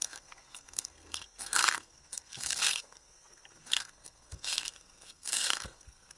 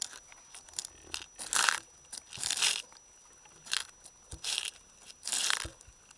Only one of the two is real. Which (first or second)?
second